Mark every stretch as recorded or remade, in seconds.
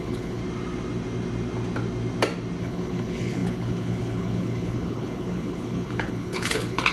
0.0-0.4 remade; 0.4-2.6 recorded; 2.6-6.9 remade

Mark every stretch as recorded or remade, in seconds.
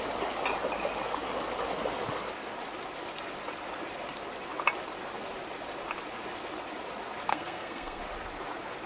0.0-7.3 recorded; 7.3-8.0 remade; 8.0-8.9 recorded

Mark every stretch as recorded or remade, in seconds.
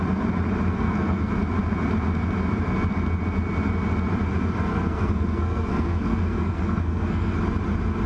0.0-0.7 recorded; 0.7-1.3 remade; 1.3-4.7 recorded; 4.7-7.4 remade; 7.4-8.1 recorded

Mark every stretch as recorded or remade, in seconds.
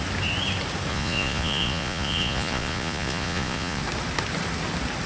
0.0-0.9 recorded; 0.9-3.8 remade; 3.8-5.1 recorded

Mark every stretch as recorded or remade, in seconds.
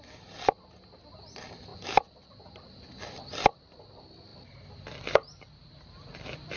0.0-4.3 recorded; 4.3-5.0 remade; 5.0-6.6 recorded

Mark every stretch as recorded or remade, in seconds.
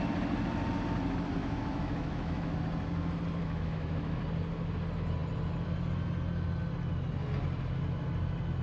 0.0-1.4 recorded; 1.4-2.5 remade; 2.5-3.4 recorded; 3.4-4.2 remade; 4.2-8.6 recorded